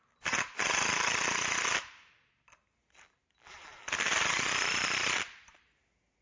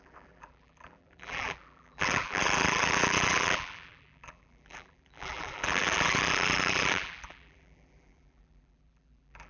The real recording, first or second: first